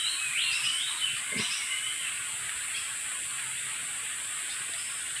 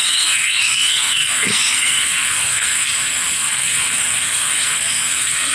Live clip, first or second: first